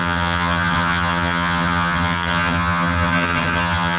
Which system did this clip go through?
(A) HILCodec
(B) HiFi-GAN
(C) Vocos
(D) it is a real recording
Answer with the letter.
B